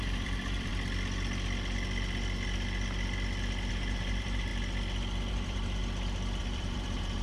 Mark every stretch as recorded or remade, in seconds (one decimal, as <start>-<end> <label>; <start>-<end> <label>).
0.0-0.7 remade; 0.7-3.7 recorded; 3.7-4.5 remade; 4.5-5.3 recorded; 5.3-5.8 remade; 5.8-6.4 recorded; 6.4-7.2 remade